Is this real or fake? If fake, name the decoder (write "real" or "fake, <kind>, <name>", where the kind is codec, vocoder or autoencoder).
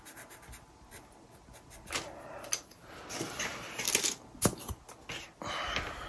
real